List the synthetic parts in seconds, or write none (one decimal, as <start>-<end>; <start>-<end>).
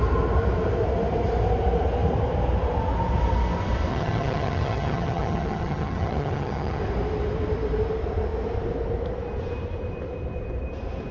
3.9-6.8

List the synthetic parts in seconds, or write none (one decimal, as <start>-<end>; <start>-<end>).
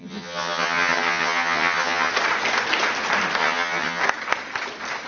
0.0-2.1; 3.4-4.0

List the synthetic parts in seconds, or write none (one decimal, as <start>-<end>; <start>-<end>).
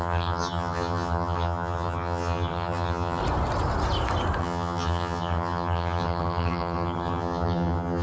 0.0-3.2; 4.4-8.0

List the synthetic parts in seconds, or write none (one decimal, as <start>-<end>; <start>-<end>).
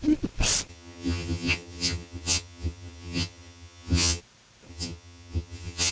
0.7-4.2; 4.7-5.9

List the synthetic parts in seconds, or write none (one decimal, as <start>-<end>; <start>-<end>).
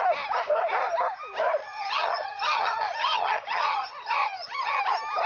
1.6-4.8